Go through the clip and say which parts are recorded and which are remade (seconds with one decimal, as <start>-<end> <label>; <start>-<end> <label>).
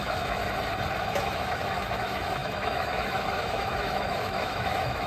0.0-0.4 remade; 0.4-1.0 recorded; 1.0-5.1 remade